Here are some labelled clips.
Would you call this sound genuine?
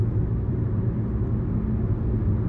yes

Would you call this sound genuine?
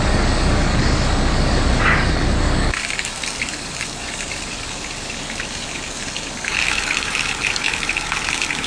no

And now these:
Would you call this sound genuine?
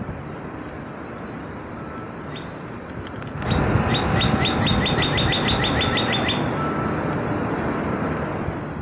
yes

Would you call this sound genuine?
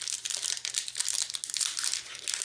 yes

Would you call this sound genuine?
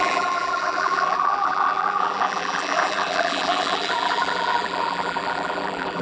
no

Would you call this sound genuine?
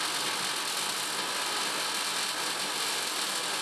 yes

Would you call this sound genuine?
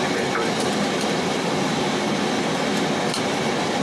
yes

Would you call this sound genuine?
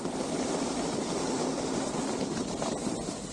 yes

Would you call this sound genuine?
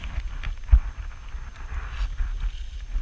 yes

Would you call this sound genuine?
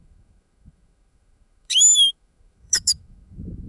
no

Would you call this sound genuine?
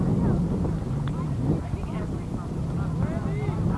yes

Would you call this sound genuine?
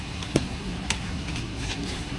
no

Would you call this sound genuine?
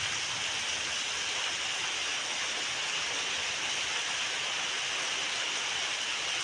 yes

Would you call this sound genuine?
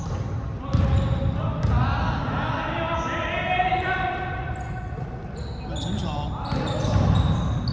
yes